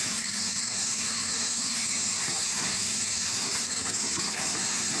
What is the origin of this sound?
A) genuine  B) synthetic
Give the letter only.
B